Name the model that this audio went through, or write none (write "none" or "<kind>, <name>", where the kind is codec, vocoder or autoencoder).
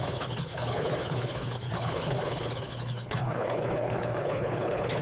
codec, HILCodec